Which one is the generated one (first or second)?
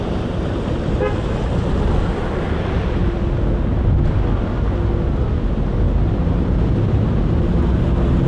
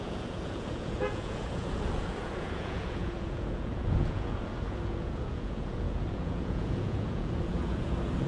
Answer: second